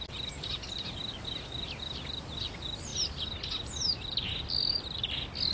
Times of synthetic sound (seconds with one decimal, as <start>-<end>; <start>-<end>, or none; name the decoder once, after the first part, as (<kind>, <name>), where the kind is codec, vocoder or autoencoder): none